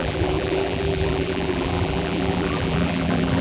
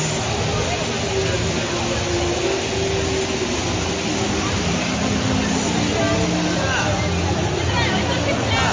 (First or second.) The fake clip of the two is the first